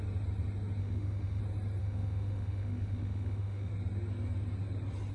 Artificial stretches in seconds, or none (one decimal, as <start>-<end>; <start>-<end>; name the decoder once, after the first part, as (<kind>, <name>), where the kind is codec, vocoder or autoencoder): 0.8-1.4 (autoencoder, DAC-VAE); 1.8-3.7